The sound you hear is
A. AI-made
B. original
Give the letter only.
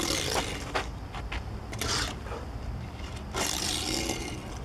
A